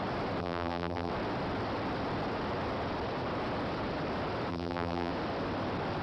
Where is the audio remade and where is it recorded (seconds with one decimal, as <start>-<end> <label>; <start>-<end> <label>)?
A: 0.0-0.4 recorded; 0.4-1.1 remade; 1.1-4.5 recorded; 4.5-5.1 remade; 5.1-6.0 recorded